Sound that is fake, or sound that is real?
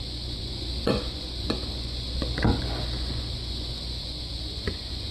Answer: fake